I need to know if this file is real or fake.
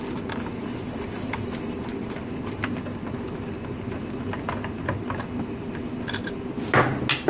real